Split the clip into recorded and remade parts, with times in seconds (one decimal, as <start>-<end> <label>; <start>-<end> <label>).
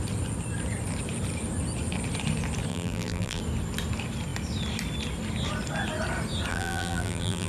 0.0-2.7 recorded; 2.7-3.4 remade; 3.4-6.5 recorded; 6.5-7.5 remade